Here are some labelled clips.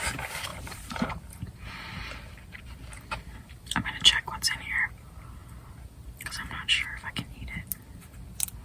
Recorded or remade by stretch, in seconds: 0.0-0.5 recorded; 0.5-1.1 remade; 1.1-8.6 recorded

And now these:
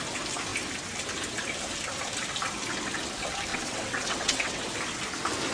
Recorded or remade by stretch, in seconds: 0.0-3.5 recorded; 3.5-4.6 remade; 4.6-5.5 recorded

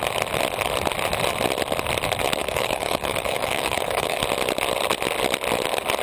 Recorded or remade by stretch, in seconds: 0.0-2.4 recorded; 2.4-4.2 remade; 4.2-6.0 recorded

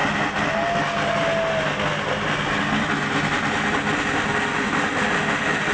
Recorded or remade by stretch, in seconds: 0.0-5.7 recorded

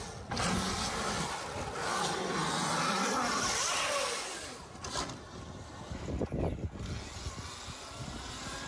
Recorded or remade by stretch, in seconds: 0.0-8.7 recorded

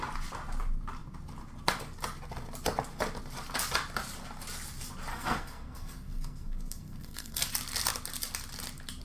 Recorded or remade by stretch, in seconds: 0.0-5.1 recorded; 5.1-7.5 remade; 7.5-9.0 recorded

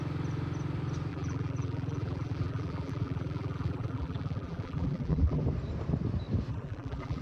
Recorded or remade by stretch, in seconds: 0.0-1.1 recorded; 1.1-5.4 remade; 5.4-6.5 recorded; 6.5-7.2 remade